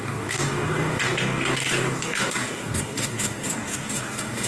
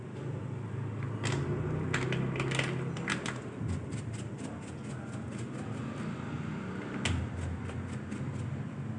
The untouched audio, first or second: second